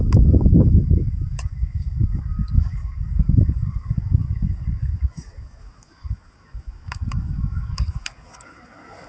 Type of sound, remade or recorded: remade